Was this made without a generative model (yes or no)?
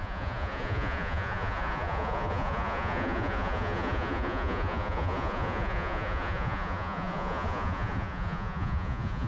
no